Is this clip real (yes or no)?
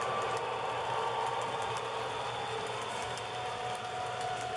yes